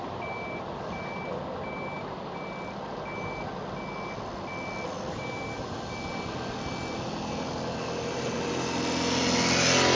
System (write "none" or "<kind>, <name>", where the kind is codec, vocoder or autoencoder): none